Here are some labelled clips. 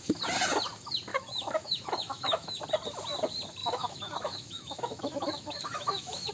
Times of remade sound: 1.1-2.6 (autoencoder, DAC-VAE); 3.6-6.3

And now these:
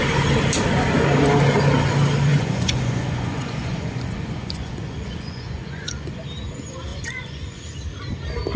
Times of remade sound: 2.3-6.2 (vocoder, Vocos); 6.9-7.6

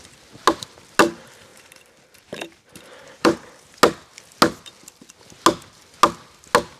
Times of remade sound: 1.5-3.7 (vocoder, BigVGAN v2)

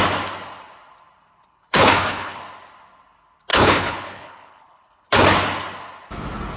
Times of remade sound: 1.4-2.4 (codec, HILCodec); 3.5-5.1

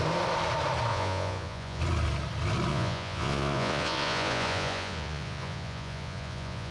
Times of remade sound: 0.9-1.8 (vocoder, Vocos); 2.7-6.7